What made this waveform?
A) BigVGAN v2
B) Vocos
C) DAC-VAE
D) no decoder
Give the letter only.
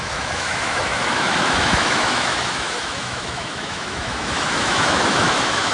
C